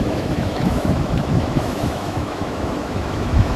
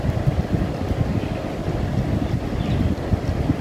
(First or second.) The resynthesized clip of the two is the first